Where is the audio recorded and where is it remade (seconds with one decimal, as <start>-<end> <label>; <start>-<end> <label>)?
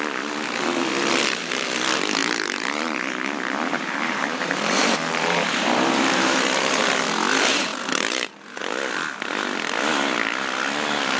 0.0-2.2 recorded; 2.2-6.8 remade; 6.8-7.7 recorded; 7.7-8.6 remade; 8.6-11.2 recorded